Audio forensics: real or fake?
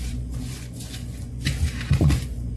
fake